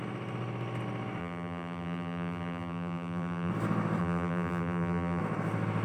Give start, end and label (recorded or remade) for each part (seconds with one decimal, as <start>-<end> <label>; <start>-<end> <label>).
0.0-1.2 recorded; 1.2-3.5 remade; 3.5-4.0 recorded; 4.0-5.2 remade; 5.2-5.8 recorded